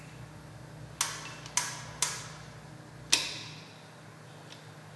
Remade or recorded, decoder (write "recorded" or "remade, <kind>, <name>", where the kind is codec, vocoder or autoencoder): recorded